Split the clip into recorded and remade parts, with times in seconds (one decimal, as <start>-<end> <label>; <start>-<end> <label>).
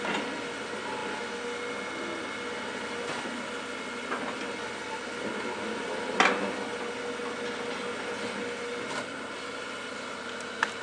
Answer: 0.0-10.8 recorded